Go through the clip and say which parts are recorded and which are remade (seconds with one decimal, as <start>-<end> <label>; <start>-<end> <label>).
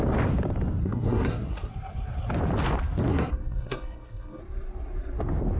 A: 0.0-0.8 recorded; 0.8-1.7 remade; 1.7-3.1 recorded; 3.1-4.4 remade; 4.4-5.6 recorded